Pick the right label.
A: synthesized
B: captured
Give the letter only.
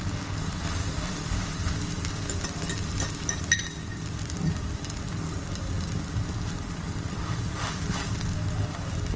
B